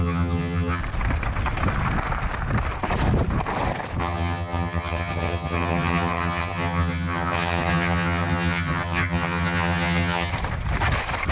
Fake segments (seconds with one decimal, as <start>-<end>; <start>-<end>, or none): 0.0-0.8; 4.0-10.3